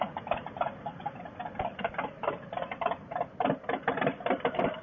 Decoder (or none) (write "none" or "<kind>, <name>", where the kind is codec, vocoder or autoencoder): none